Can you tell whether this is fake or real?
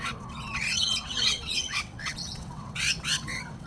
fake